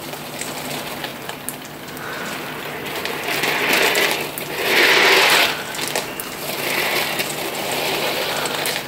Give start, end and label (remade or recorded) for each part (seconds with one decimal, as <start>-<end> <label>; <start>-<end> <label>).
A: 0.0-8.9 recorded